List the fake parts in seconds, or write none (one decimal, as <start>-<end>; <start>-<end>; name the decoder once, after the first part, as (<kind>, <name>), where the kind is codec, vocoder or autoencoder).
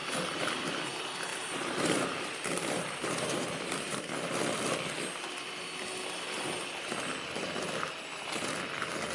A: 1.3-4.1 (vocoder, BigVGAN v2)